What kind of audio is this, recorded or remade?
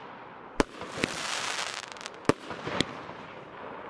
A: recorded